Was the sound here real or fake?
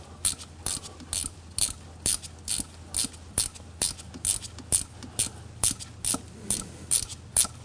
real